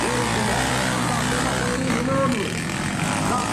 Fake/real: real